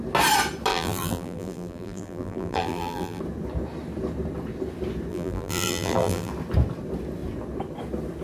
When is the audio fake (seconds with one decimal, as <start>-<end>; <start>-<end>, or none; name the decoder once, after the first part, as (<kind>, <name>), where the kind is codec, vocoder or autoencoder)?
0.7-3.2 (vocoder, BigVGAN v2); 5.1-6.3